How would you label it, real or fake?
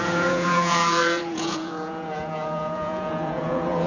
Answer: fake